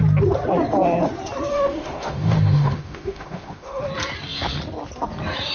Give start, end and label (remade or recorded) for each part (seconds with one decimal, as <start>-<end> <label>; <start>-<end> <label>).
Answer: 0.0-1.5 recorded; 1.5-3.8 remade; 3.8-5.5 recorded